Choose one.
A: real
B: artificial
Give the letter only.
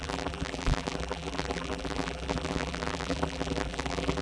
B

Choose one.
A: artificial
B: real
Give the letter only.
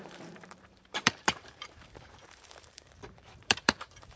A